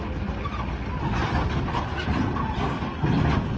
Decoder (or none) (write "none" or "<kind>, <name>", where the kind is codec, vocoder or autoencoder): none